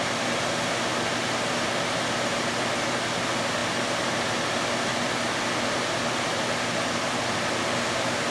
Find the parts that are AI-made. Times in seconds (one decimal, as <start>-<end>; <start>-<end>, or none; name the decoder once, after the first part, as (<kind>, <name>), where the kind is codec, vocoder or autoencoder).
none

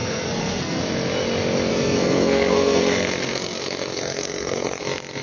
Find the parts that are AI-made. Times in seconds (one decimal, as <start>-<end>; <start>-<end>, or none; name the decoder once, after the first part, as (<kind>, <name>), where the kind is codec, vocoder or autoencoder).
0.0-0.8 (codec, SNAC); 1.7-4.8

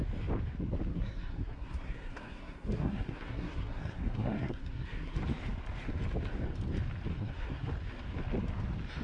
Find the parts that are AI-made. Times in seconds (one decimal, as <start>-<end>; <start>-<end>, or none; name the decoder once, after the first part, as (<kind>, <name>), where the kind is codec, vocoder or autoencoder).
0.9-5.2 (codec, SNAC); 7.1-7.7

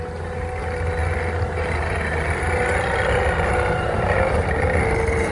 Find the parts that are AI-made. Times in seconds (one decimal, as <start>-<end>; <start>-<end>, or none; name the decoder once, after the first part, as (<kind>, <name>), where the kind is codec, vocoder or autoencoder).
none

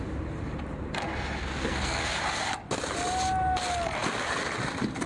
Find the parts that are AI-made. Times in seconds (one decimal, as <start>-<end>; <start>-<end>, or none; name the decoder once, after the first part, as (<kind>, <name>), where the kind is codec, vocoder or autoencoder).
1.4-2.2 (codec, SNAC)

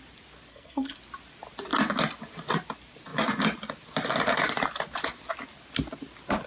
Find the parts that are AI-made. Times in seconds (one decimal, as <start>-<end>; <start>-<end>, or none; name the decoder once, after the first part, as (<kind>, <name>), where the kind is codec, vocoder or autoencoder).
0.5-1.0 (codec, SNAC)